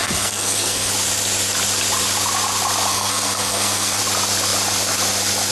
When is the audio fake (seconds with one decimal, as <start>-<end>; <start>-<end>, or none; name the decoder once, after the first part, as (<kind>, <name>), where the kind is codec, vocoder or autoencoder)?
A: 0.0-0.9 (codec, SNAC); 2.9-4.0